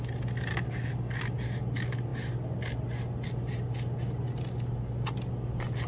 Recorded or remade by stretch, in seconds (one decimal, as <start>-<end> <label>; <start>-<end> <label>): 0.0-0.5 recorded; 0.5-1.2 remade; 1.2-5.9 recorded